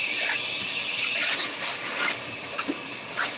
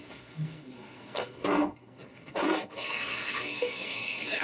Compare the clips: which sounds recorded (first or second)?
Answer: first